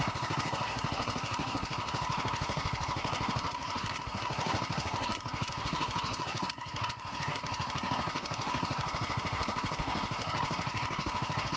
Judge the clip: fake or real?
fake